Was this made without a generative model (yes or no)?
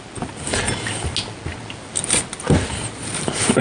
yes